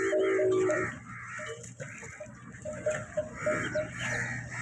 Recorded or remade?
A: recorded